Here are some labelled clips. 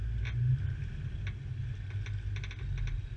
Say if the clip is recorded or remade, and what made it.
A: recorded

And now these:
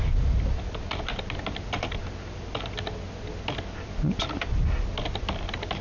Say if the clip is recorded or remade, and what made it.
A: recorded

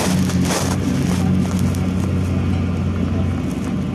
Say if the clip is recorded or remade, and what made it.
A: recorded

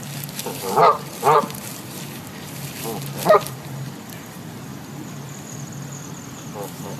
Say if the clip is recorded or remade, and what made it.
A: remade, vocoder, BigVGAN v2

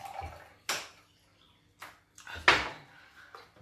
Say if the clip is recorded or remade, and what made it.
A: recorded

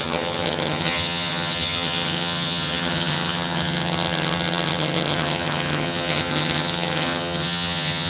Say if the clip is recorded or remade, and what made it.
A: remade, vocoder, HiFi-GAN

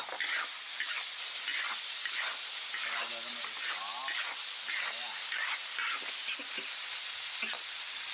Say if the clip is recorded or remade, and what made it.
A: recorded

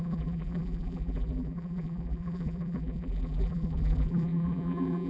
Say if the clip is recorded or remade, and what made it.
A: remade, vocoder, BigVGAN v2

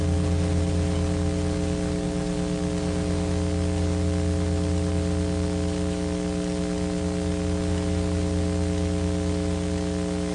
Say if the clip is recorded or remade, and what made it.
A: recorded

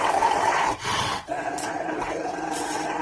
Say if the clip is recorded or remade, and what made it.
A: remade, vocoder, WaveNeXt